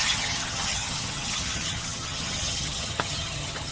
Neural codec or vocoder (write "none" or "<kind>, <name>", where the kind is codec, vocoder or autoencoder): vocoder, HiFi-GAN